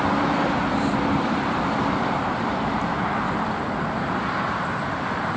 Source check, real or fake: real